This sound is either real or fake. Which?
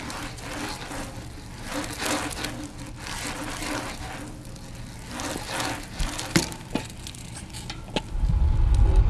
real